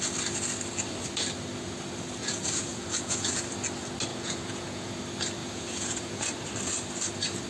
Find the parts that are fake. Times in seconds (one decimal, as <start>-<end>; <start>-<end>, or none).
2.2-3.3; 4.1-5.0; 5.4-6.2